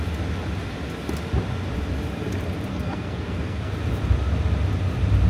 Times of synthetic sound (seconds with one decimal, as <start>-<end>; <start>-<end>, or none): 2.7-3.7